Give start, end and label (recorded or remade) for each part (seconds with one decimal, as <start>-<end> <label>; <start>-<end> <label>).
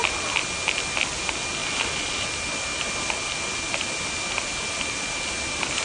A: 0.0-5.8 recorded